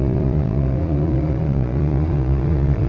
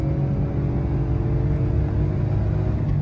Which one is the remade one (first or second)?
first